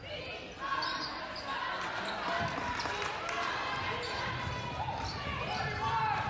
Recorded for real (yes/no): yes